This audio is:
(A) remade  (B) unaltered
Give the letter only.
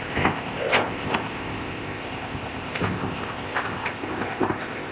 A